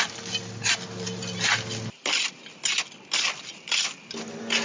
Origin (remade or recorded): recorded